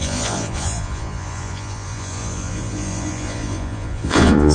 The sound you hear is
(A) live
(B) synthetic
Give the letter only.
B